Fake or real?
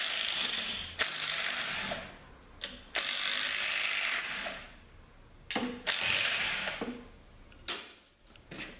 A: real